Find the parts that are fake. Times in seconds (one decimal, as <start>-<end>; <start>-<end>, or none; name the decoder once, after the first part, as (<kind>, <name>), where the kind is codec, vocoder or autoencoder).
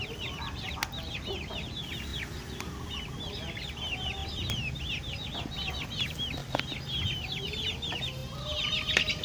none